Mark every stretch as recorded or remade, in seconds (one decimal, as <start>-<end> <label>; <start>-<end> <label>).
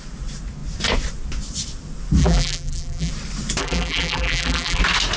0.0-2.2 recorded; 2.2-3.1 remade; 3.1-3.6 recorded; 3.6-4.8 remade; 4.8-5.2 recorded